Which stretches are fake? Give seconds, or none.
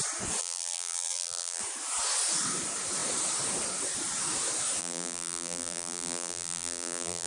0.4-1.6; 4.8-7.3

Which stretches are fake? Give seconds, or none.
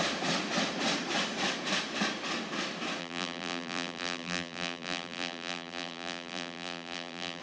3.0-7.4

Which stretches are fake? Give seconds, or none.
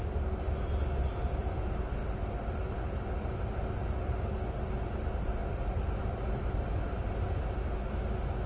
none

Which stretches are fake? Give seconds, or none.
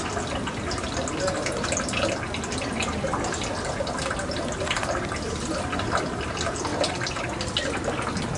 none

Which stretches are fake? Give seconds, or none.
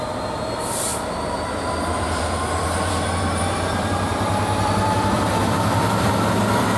0.0-6.8